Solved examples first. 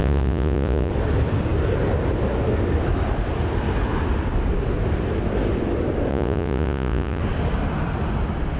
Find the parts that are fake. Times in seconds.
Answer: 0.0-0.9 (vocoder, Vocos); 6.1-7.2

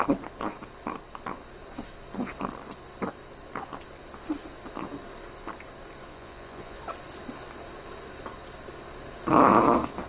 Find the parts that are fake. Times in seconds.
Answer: 6.1-6.8 (vocoder, Vocos)